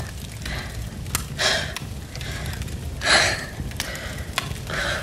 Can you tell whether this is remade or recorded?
recorded